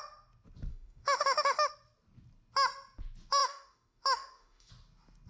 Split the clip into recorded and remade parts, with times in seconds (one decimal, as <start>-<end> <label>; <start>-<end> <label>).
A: 0.0-0.7 recorded; 0.7-1.7 remade; 1.7-3.4 recorded; 3.4-4.7 remade; 4.7-5.3 recorded